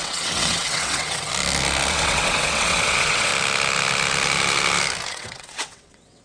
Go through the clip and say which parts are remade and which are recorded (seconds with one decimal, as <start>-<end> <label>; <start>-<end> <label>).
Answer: 0.0-1.3 remade; 1.3-1.9 recorded; 1.9-3.3 remade; 3.3-5.1 recorded; 5.1-6.2 remade